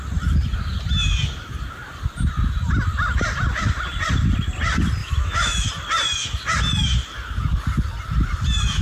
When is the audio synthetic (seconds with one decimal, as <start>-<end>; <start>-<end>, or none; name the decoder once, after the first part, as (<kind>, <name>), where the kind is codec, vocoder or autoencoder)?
5.0-5.7 (autoencoder, DAC-VAE)